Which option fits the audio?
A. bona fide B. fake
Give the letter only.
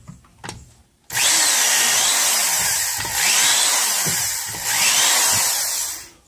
A